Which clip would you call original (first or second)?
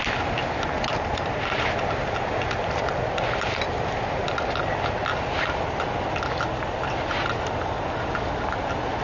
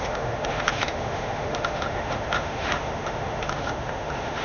first